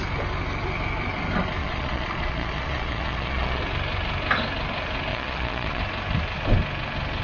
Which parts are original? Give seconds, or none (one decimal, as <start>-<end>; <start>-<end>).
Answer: 0.0-1.6; 3.6-5.1; 5.8-7.2